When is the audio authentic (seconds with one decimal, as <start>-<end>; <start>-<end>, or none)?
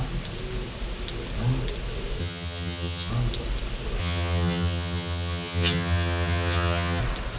0.0-2.2; 3.1-4.0; 7.0-7.4